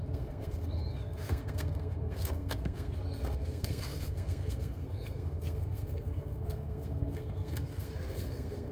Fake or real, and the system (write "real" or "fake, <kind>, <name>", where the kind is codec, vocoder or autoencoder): fake, codec, SNAC